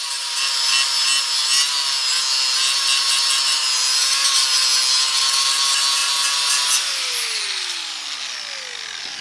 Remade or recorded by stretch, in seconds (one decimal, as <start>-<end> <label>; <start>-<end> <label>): 0.0-9.2 recorded